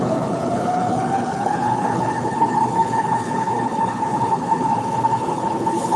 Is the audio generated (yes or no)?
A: yes